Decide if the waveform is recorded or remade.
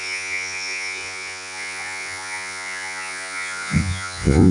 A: remade